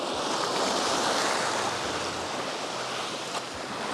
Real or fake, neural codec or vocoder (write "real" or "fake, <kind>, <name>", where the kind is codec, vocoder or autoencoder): real